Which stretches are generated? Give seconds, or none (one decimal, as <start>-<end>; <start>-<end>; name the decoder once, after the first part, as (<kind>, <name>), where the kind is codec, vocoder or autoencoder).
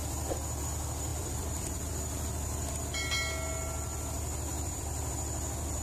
1.1-2.7 (vocoder, BigVGAN v2); 4.5-5.1